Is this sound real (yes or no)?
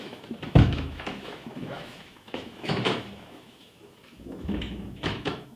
no